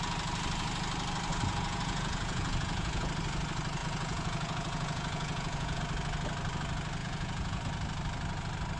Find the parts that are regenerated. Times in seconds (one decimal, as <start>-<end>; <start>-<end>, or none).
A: 1.3-3.1; 3.8-5.8; 7.0-7.6